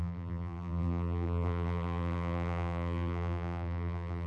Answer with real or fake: fake